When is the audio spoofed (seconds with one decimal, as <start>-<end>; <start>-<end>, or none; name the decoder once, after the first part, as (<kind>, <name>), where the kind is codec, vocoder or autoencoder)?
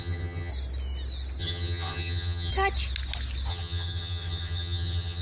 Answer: 0.0-0.5 (vocoder, HiFi-GAN); 1.4-2.5; 3.5-5.2